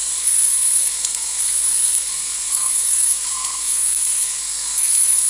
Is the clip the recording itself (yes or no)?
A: no